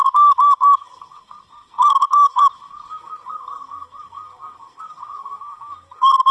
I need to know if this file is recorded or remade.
remade